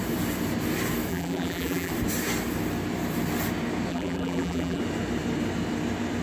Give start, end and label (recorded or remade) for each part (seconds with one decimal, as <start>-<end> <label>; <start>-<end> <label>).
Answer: 0.0-1.1 recorded; 1.1-1.9 remade; 1.9-3.9 recorded; 3.9-4.8 remade; 4.8-6.2 recorded